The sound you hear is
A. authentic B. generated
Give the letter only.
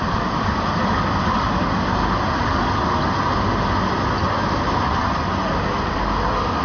A